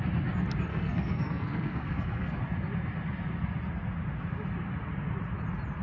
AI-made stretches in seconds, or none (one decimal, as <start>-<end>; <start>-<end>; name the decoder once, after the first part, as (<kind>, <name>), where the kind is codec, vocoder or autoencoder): 0.7-2.4 (codec, SNAC)